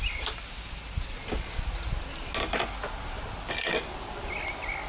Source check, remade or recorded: recorded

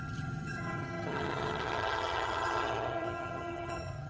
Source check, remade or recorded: remade